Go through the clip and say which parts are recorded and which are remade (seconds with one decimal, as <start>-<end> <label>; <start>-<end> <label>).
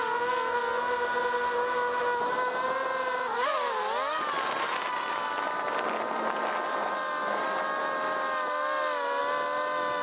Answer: 0.0-10.0 recorded